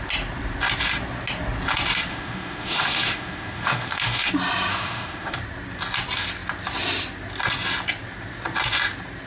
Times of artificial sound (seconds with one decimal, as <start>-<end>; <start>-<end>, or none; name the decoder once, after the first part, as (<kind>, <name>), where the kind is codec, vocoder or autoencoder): 2.1-4.3 (autoencoder, DAC-VAE); 4.7-5.4